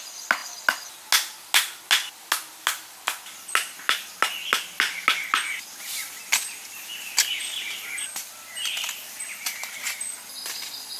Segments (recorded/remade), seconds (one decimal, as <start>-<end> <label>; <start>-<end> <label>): 0.0-11.0 recorded